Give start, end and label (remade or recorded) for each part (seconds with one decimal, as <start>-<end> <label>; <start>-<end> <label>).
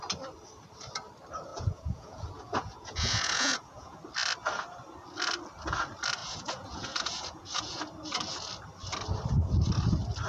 0.0-1.5 recorded; 1.5-4.0 remade; 4.0-6.2 recorded; 6.2-7.8 remade; 7.8-10.3 recorded